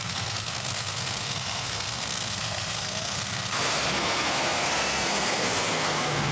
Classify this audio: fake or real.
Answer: fake